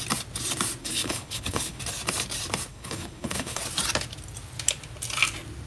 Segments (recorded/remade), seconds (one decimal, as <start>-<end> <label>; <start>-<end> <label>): 0.0-0.8 recorded; 0.8-1.8 remade; 1.8-2.7 recorded; 2.7-3.6 remade; 3.6-5.7 recorded